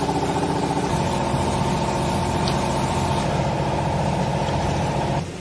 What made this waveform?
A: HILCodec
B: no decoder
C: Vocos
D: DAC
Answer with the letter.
B